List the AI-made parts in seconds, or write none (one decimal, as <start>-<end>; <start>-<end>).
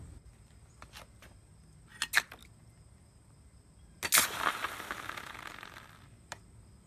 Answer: none